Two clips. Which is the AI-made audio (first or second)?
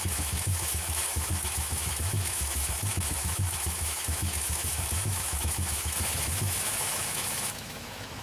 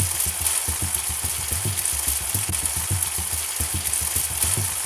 first